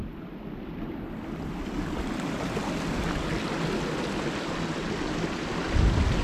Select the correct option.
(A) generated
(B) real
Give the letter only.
B